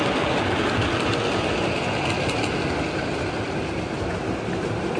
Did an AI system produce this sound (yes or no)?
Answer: no